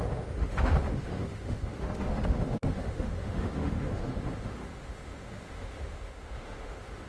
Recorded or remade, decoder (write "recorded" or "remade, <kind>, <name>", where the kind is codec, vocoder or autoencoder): remade, autoencoder, DAC-VAE